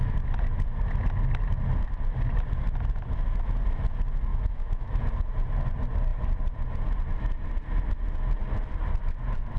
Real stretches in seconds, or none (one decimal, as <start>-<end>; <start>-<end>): 0.0-4.3; 5.0-9.6